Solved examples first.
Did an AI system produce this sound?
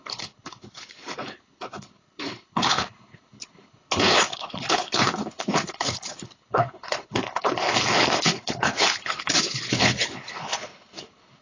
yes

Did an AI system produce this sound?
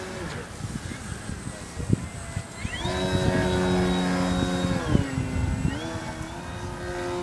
no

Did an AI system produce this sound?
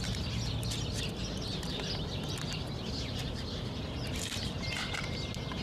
no